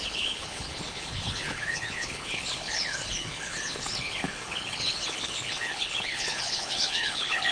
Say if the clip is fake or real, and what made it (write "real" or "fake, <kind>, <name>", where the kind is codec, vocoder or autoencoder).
fake, codec, HILCodec